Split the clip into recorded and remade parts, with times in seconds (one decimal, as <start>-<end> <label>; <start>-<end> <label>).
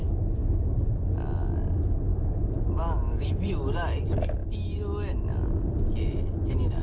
0.0-2.1 recorded; 2.1-3.5 remade; 3.5-4.4 recorded; 4.4-5.1 remade; 5.1-6.8 recorded